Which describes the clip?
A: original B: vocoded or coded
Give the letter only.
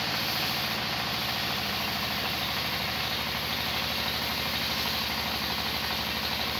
A